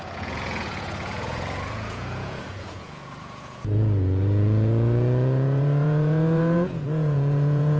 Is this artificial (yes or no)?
yes